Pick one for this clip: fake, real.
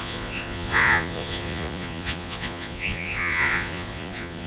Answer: fake